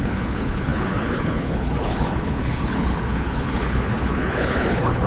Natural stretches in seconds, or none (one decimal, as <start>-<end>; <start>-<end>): none